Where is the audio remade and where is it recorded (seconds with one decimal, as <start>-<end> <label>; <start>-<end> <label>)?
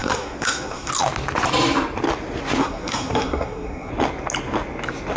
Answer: 0.0-0.9 remade; 0.9-2.6 recorded; 2.6-3.9 remade; 3.9-5.2 recorded